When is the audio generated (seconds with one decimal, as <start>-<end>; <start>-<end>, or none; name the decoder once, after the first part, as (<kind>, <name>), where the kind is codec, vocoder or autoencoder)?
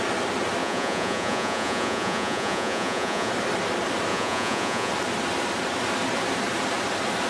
0.6-3.3 (vocoder, Vocos); 4.1-4.9